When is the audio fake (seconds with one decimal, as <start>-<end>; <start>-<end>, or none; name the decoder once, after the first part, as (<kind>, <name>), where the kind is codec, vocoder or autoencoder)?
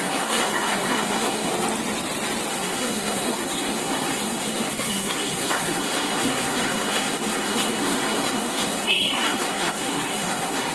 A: 0.0-1.5 (codec, SNAC); 2.5-10.7